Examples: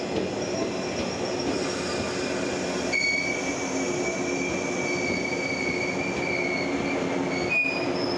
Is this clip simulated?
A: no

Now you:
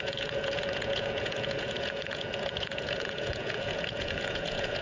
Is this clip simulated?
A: yes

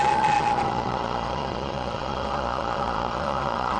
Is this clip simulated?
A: yes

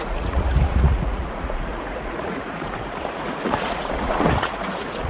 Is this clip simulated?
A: yes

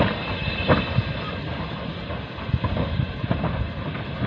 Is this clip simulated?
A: no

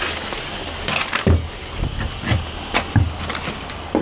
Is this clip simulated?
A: no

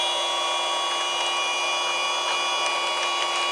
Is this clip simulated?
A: no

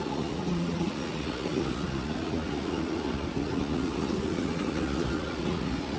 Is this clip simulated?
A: yes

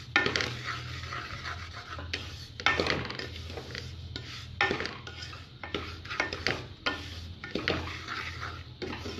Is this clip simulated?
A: no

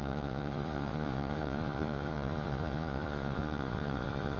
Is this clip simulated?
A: yes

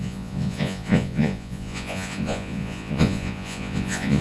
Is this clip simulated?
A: yes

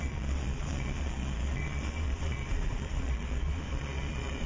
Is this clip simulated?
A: yes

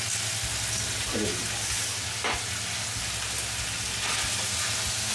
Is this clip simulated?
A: no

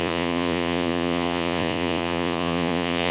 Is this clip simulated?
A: yes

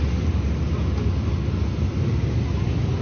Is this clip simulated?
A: no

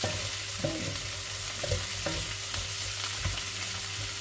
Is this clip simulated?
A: no